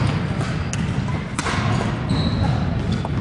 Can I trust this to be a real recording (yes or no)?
yes